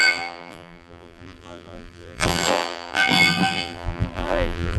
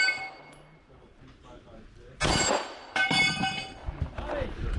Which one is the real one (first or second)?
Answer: second